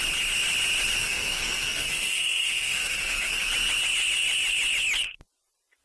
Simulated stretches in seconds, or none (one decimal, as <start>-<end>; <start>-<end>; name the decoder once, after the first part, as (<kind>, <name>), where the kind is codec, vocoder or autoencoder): 1.0-3.5 (codec, SNAC)